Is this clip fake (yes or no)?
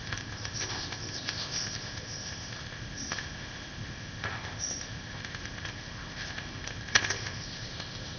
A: yes